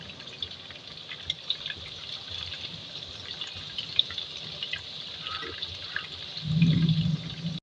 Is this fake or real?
real